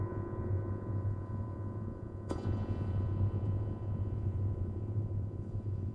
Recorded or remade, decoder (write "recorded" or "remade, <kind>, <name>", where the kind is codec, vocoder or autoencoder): remade, vocoder, Vocos